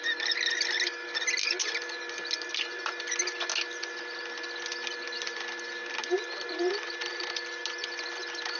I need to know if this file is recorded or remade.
recorded